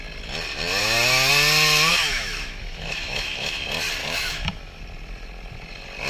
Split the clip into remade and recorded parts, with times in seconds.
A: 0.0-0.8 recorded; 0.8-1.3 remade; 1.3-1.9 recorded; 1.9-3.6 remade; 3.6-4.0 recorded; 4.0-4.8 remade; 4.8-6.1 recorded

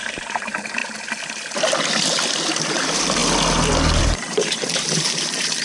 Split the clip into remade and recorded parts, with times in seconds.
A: 0.0-0.8 remade; 0.8-2.7 recorded; 2.7-3.2 remade; 3.2-4.0 recorded; 4.0-5.6 remade

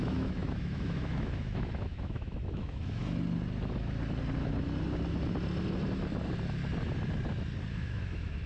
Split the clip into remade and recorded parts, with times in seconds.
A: 0.0-3.0 remade; 3.0-7.7 recorded; 7.7-8.5 remade

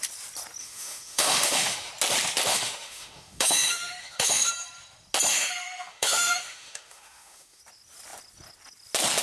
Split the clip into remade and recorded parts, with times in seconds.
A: 0.0-0.6 recorded; 0.6-1.9 remade; 1.9-2.5 recorded; 2.5-4.5 remade; 4.5-5.3 recorded; 5.3-7.6 remade; 7.6-9.2 recorded

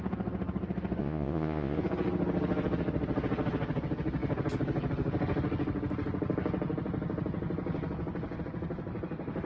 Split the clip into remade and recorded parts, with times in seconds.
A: 0.0-1.0 recorded; 1.0-1.8 remade; 1.8-9.5 recorded

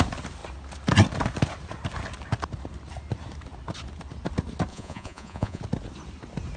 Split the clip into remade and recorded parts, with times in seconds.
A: 0.0-4.7 recorded; 4.7-5.6 remade; 5.6-6.6 recorded

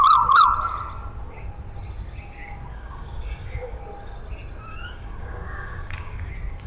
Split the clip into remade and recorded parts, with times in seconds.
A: 0.0-2.7 recorded; 2.7-3.8 remade; 3.8-4.7 recorded; 4.7-6.3 remade; 6.3-6.7 recorded